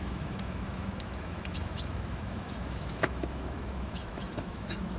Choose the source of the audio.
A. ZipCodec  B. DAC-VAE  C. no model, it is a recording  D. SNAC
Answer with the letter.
B